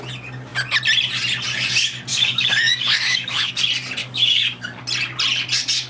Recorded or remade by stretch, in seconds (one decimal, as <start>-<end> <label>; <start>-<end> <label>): 0.0-2.1 recorded; 2.1-3.5 remade; 3.5-4.0 recorded; 4.0-4.8 remade; 4.8-5.9 recorded